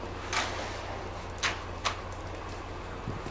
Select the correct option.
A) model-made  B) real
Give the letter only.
B